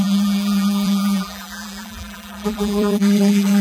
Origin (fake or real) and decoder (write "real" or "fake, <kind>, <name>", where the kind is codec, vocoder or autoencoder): fake, vocoder, BigVGAN v2